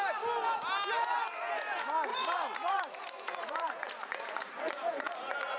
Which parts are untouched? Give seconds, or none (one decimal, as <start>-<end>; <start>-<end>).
0.0-2.1